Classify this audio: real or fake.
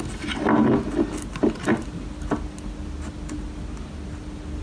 real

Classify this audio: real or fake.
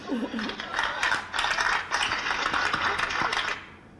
real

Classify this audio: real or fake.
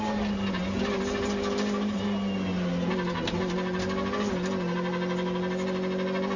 real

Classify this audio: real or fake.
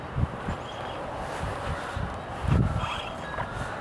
real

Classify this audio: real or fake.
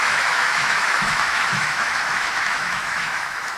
fake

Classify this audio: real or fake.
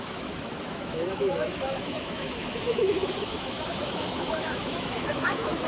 fake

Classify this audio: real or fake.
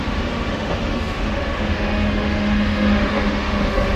fake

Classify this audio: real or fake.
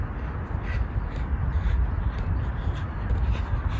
real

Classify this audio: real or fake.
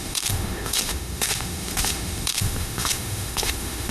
fake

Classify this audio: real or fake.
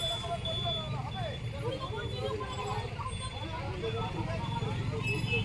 real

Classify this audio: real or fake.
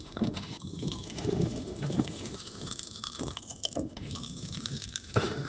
fake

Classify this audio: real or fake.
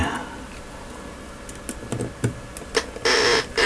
real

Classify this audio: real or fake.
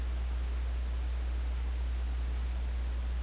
real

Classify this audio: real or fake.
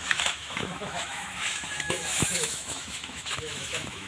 fake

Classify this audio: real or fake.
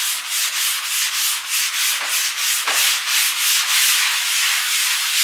real